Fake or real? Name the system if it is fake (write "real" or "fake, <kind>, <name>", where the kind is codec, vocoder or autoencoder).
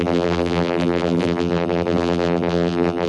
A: fake, vocoder, BigVGAN v2